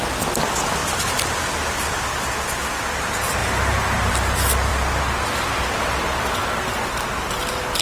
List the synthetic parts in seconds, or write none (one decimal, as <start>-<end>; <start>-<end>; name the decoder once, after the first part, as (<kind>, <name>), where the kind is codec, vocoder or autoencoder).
3.4-4.1 (vocoder, BigVGAN v2)